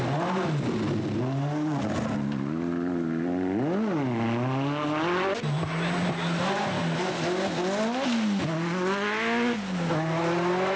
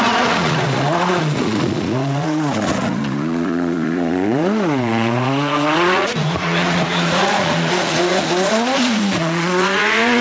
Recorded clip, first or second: first